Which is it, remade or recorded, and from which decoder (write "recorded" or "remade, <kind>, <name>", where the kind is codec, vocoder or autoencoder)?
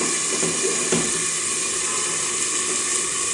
recorded